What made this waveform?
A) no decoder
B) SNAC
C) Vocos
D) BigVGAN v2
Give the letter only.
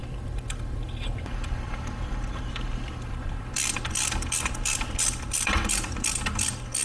D